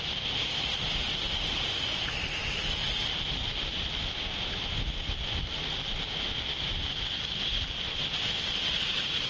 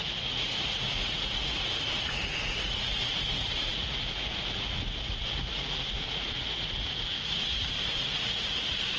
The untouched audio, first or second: first